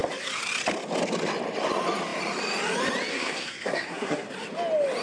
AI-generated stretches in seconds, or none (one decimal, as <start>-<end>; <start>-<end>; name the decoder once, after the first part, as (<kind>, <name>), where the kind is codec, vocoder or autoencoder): 3.1-4.3 (codec, SNAC)